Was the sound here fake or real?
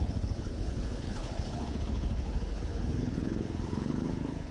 fake